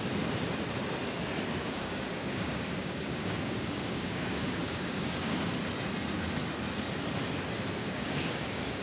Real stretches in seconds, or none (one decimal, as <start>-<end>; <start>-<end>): 0.0-1.6; 5.5-7.8

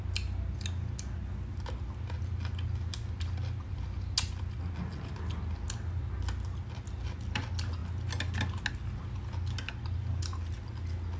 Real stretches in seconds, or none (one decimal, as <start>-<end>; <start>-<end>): 0.0-11.2